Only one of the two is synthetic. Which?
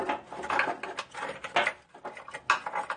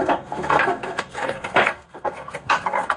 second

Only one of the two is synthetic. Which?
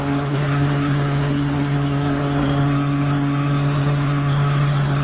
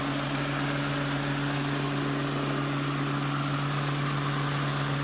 first